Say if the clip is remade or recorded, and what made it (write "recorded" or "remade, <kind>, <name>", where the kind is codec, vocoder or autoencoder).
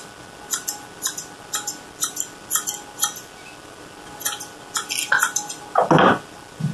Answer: recorded